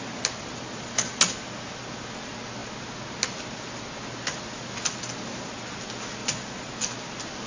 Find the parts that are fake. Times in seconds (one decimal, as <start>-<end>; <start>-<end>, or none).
6.2-6.7